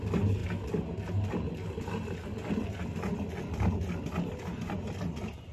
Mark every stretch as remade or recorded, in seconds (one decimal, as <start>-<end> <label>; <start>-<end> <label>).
0.0-5.5 recorded